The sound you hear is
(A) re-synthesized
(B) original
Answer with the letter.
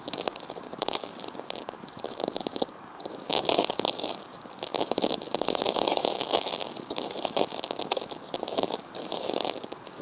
A